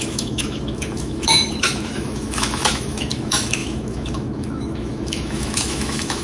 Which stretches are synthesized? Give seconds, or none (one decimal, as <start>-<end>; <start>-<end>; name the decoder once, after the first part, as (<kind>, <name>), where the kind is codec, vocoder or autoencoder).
0.0-6.2 (autoencoder, DAC-VAE)